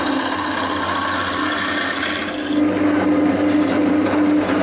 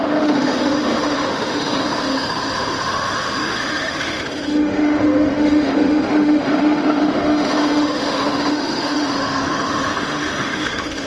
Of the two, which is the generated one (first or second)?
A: second